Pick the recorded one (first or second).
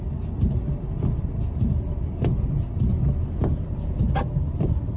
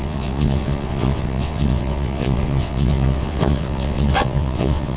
first